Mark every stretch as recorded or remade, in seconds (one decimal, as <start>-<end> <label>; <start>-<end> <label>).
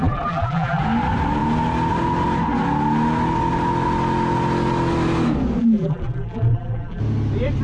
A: 0.0-0.8 remade; 0.8-5.6 recorded; 5.6-7.0 remade; 7.0-7.6 recorded